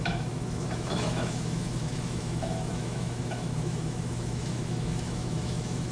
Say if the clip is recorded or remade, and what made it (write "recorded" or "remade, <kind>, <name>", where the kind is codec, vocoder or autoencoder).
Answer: remade, autoencoder, DAC-VAE